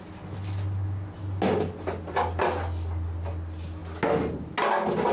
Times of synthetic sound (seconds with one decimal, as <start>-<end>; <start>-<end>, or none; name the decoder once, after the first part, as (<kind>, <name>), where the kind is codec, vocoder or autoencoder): none